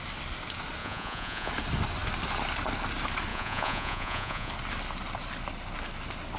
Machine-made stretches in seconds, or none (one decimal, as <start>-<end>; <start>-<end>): 0.8-1.5; 3.3-4.5